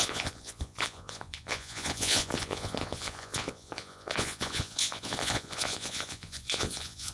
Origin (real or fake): fake